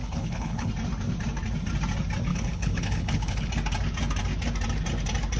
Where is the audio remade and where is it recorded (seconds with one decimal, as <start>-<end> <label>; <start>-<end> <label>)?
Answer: 0.0-0.7 remade; 0.7-2.3 recorded; 2.3-3.5 remade; 3.5-5.4 recorded